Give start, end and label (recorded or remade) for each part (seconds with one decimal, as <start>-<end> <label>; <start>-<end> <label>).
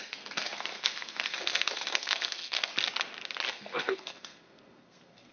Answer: 0.0-2.7 remade; 2.7-3.5 recorded; 3.5-5.3 remade